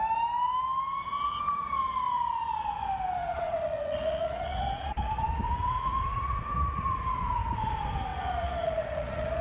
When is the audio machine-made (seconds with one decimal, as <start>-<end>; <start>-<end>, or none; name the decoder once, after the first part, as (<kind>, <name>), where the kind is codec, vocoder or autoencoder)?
3.2-7.7 (vocoder, Vocos); 8.1-9.4